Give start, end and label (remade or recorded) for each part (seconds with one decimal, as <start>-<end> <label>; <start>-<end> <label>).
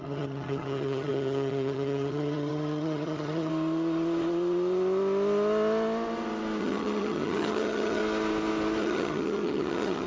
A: 0.0-3.5 remade; 3.5-6.6 recorded; 6.6-8.0 remade; 8.0-8.8 recorded; 8.8-10.1 remade